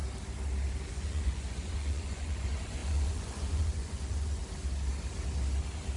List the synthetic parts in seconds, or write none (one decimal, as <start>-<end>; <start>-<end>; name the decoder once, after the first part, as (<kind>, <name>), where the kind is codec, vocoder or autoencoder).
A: 0.9-4.4 (vocoder, Vocos)